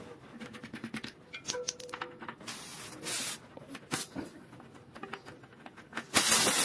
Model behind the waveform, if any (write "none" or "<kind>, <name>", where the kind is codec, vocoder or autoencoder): none